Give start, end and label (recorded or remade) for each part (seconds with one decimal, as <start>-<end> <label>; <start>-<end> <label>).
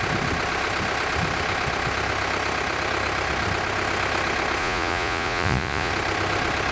0.0-4.6 recorded; 4.6-5.9 remade; 5.9-6.7 recorded